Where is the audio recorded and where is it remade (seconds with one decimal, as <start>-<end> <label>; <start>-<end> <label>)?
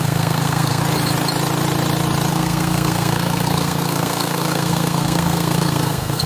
0.0-0.8 remade; 0.8-2.3 recorded; 2.3-6.3 remade